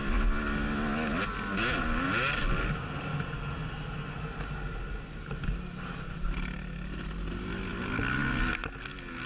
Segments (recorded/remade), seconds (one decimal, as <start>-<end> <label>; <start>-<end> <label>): 0.0-9.3 recorded